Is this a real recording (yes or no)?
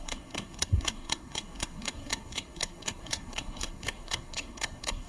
no